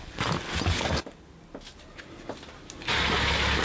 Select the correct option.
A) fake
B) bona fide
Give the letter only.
B